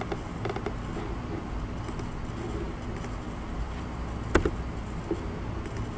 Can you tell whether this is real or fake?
real